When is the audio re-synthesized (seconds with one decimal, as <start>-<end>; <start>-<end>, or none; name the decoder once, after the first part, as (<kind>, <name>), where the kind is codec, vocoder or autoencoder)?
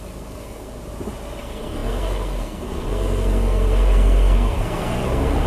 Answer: 0.0-0.8 (codec, SNAC); 1.4-5.5